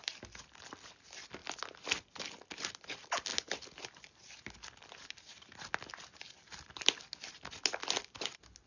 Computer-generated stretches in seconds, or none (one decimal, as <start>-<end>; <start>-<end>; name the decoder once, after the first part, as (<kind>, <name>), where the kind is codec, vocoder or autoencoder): none